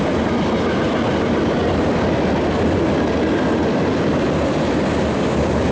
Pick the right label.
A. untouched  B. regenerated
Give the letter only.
A